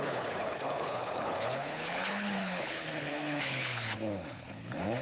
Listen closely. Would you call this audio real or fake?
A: fake